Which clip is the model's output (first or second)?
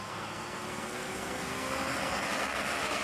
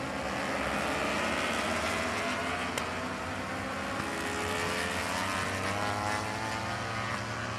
first